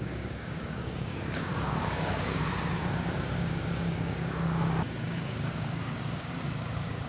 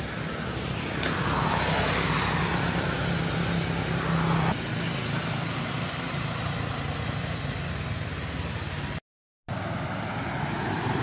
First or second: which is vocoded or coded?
first